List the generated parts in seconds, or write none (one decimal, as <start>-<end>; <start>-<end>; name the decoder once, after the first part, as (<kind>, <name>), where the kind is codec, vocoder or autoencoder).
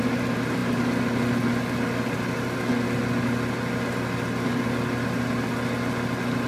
none